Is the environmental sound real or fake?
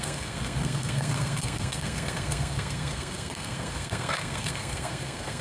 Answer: fake